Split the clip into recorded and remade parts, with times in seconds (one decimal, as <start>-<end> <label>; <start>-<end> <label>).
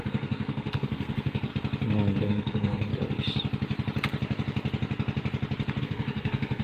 0.0-1.5 remade; 1.5-2.2 recorded; 2.2-2.9 remade; 2.9-5.8 recorded; 5.8-6.6 remade